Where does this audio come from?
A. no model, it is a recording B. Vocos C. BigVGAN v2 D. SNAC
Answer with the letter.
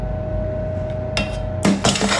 A